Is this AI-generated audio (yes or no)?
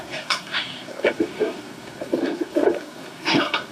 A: yes